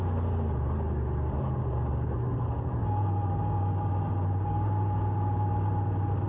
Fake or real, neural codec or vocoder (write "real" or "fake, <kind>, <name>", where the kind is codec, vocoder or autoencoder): real